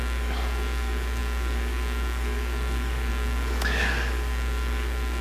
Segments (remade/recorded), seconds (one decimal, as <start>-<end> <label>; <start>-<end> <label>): 0.0-5.2 remade